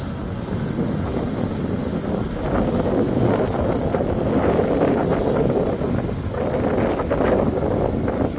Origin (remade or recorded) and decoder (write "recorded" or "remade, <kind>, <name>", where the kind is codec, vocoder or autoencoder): recorded